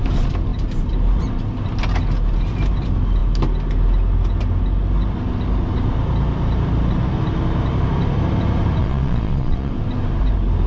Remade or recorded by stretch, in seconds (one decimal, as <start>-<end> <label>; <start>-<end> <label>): 0.0-8.8 recorded; 8.8-9.7 remade; 9.7-10.7 recorded